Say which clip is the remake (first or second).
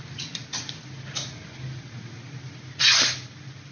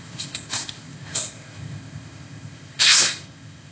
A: second